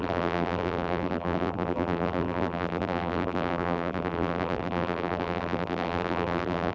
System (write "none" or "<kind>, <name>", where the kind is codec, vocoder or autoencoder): vocoder, BigVGAN v2